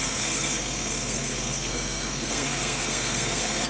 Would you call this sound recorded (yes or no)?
no